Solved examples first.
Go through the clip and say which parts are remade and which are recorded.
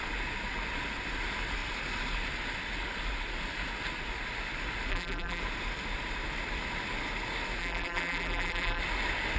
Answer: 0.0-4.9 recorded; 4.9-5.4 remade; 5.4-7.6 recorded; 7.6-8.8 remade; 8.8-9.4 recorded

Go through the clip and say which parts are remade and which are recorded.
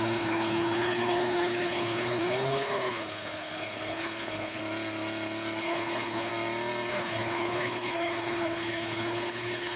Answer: 0.0-4.6 remade; 4.6-5.6 recorded; 5.6-6.3 remade; 6.3-6.9 recorded; 6.9-9.8 remade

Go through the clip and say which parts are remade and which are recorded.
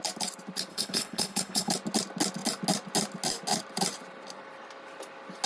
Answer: 0.0-0.7 recorded; 0.7-1.7 remade; 1.7-5.5 recorded